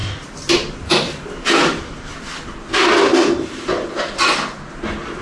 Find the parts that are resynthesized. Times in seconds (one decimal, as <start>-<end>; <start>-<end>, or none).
none